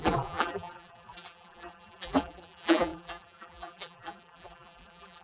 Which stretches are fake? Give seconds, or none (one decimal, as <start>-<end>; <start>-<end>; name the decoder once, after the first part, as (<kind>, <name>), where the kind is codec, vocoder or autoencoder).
0.0-5.2 (vocoder, BigVGAN v2)